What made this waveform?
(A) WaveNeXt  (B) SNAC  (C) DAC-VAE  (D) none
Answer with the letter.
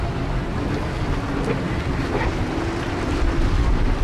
D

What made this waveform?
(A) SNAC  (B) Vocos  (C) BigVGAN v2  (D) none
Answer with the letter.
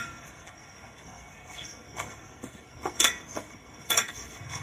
A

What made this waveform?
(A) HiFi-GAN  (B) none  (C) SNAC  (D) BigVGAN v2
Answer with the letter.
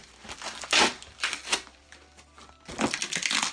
B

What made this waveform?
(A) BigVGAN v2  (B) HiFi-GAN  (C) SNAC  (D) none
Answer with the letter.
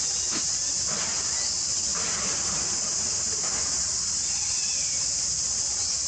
D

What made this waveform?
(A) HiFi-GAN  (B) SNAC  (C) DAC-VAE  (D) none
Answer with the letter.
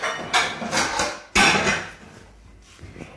D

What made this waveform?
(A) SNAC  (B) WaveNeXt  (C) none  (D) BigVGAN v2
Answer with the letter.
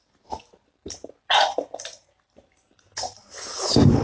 C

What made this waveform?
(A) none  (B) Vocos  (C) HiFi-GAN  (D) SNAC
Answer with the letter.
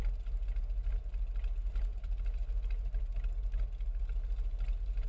A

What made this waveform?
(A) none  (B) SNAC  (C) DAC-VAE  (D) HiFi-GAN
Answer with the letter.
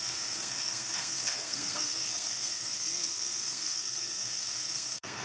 B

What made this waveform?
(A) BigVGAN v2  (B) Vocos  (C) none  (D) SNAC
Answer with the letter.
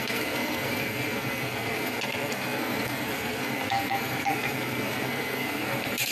D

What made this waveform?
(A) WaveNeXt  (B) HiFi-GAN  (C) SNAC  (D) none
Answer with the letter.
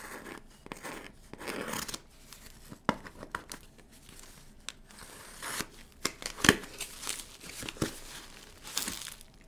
D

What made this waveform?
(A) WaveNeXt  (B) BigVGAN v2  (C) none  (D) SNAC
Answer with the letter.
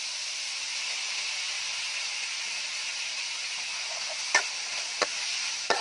C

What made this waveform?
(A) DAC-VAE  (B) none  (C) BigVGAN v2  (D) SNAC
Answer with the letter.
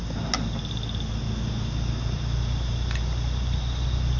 B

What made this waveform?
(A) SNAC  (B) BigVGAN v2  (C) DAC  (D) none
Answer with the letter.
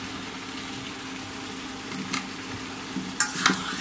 D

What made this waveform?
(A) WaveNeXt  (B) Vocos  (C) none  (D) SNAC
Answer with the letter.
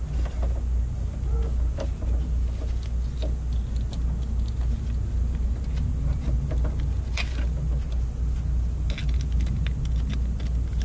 C